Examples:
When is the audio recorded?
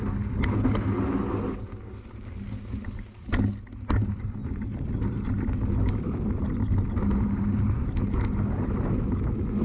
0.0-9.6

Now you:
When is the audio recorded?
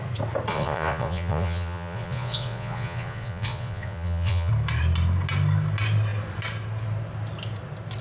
0.0-0.5; 4.5-8.0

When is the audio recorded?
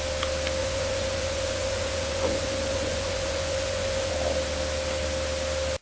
0.0-0.6; 4.1-5.8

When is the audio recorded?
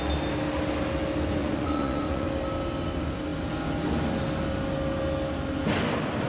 0.0-1.4; 2.3-6.3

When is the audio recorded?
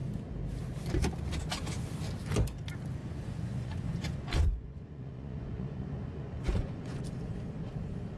0.0-3.0; 7.0-8.2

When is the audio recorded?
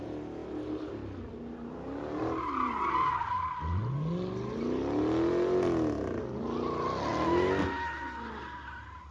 0.0-9.1